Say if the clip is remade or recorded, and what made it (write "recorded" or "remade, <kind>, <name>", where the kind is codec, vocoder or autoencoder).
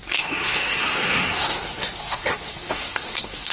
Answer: remade, codec, SNAC